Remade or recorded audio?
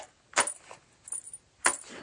recorded